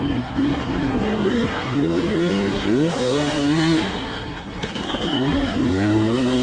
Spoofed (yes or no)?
yes